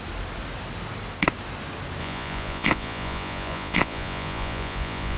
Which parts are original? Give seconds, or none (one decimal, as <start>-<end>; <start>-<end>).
0.0-2.0